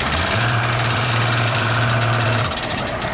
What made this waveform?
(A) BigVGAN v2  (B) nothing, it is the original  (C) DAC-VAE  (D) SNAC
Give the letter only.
A